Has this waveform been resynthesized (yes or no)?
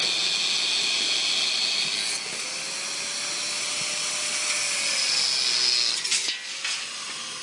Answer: no